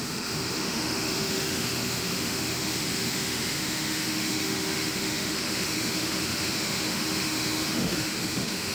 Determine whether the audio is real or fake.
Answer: fake